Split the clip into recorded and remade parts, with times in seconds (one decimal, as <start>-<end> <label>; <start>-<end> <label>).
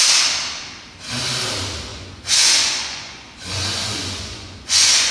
0.0-1.9 recorded; 1.9-5.1 remade